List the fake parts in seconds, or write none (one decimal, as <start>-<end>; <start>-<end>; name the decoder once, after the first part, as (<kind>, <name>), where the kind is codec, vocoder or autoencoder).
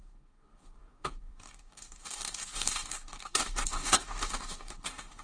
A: 0.0-5.2 (codec, DAC)